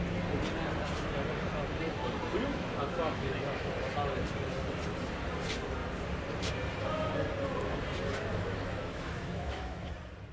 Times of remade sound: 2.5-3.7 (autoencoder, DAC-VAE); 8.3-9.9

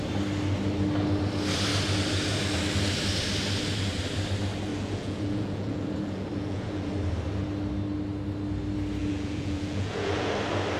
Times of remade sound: 4.7-6.9 (vocoder, Vocos); 9.0-10.3

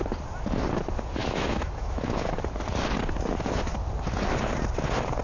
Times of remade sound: 1.2-2.3 (autoencoder, DAC-VAE)

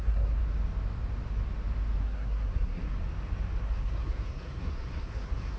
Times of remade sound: 0.0-0.4 (codec, SNAC); 2.0-3.0; 3.6-5.6

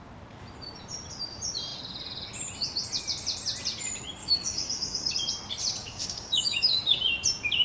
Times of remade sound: 4.2-5.1 (codec, DAC); 5.8-6.8

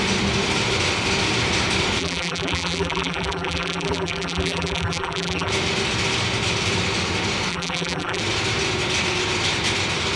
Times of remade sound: 2.0-5.5 (vocoder, BigVGAN v2); 7.5-8.2

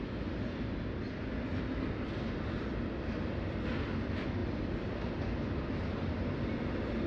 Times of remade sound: none

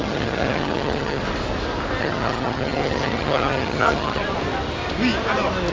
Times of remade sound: 0.0-1.2 (vocoder, HiFi-GAN); 2.0-4.2